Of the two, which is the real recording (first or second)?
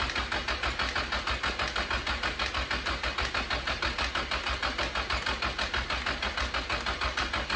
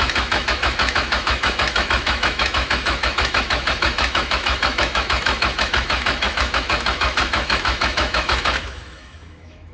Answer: first